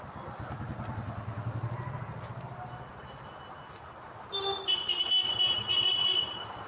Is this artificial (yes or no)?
no